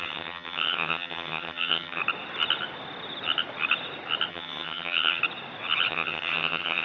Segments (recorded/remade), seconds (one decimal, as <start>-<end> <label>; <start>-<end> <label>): 0.0-2.0 remade; 2.0-4.3 recorded; 4.3-5.2 remade; 5.2-5.9 recorded; 5.9-6.8 remade

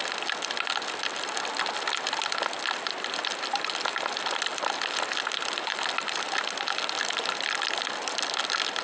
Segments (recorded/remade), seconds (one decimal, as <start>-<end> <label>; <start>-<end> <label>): 0.0-8.8 recorded

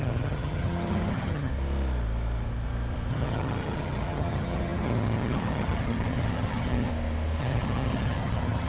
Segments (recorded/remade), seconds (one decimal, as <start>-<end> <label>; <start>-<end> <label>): 0.0-1.5 remade; 1.5-3.1 recorded; 3.1-6.9 remade; 6.9-7.4 recorded; 7.4-8.7 remade

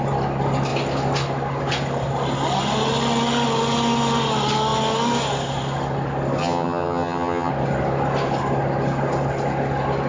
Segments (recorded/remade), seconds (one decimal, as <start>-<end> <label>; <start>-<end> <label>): 0.0-6.4 recorded; 6.4-7.5 remade; 7.5-10.1 recorded

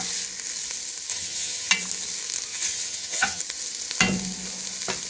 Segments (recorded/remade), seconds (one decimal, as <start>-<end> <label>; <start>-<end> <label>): 0.0-1.1 recorded; 1.1-1.7 remade; 1.7-2.5 recorded; 2.5-3.4 remade; 3.4-5.1 recorded